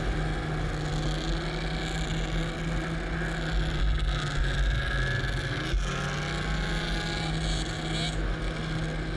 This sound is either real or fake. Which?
real